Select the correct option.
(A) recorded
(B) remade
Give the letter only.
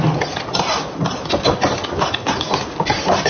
A